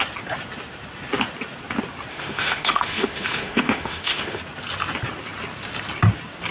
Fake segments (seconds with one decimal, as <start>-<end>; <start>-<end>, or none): 2.1-4.4